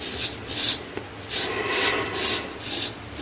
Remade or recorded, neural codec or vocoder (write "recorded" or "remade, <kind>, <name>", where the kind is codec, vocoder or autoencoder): recorded